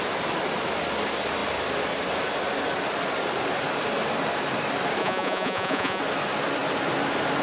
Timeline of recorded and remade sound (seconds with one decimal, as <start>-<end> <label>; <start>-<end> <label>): 0.0-5.0 recorded; 5.0-6.0 remade; 6.0-7.4 recorded